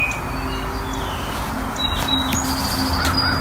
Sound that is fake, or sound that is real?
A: real